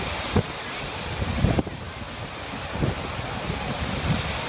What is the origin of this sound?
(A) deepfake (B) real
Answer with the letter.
B